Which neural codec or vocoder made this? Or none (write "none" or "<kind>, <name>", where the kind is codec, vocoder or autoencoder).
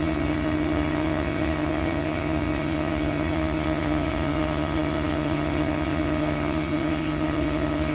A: vocoder, HiFi-GAN